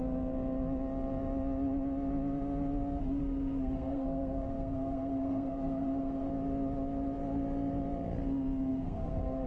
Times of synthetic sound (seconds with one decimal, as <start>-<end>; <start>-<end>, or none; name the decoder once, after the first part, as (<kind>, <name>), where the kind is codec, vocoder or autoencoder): 3.2-6.3 (codec, SNAC); 8.7-9.5